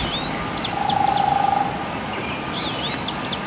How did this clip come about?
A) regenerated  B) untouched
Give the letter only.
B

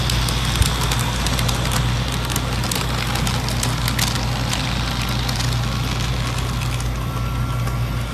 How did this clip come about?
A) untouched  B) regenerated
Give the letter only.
A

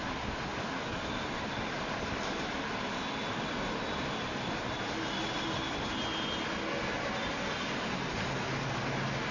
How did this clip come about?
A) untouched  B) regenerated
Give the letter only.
A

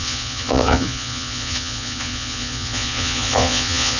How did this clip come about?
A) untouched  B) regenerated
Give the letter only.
B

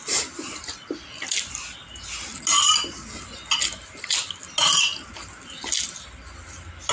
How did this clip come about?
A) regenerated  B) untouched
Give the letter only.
B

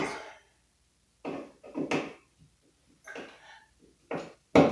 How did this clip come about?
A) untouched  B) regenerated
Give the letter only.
A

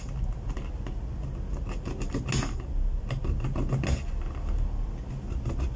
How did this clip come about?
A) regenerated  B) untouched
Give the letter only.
B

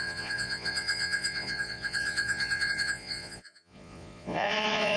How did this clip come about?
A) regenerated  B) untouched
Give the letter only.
A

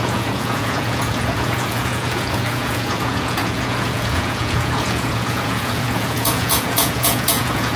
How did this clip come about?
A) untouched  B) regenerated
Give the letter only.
B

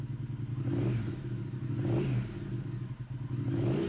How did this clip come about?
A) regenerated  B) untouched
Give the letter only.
B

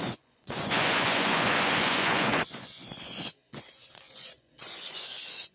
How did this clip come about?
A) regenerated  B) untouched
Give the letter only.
A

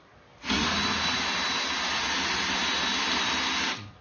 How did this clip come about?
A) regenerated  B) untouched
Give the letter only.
B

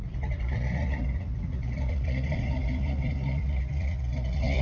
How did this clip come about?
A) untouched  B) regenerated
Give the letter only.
B